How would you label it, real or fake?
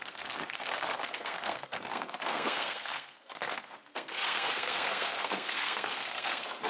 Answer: fake